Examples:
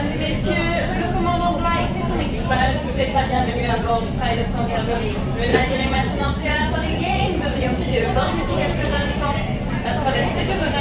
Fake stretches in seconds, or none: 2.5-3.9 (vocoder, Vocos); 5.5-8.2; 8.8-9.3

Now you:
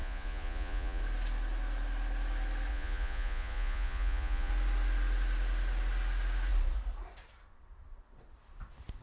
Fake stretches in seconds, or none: 0.0-1.0 (vocoder, Vocos); 2.7-4.5

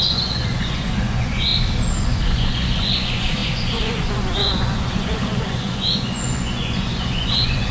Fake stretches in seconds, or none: 0.0-1.5 (vocoder, Vocos); 2.0-7.7

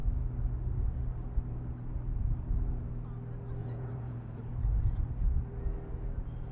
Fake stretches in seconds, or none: 3.6-5.1 (vocoder, Vocos)

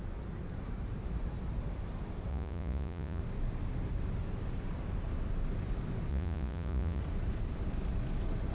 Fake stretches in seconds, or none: 2.3-3.2 (vocoder, Vocos); 6.1-7.0